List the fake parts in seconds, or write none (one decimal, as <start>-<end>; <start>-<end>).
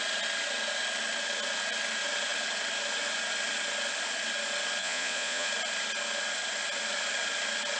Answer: 4.8-5.5